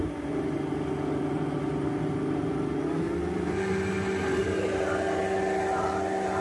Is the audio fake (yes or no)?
no